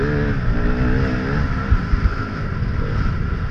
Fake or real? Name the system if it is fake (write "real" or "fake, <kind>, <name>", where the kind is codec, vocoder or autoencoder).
real